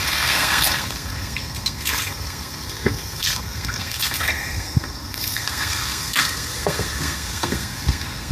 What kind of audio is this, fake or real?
fake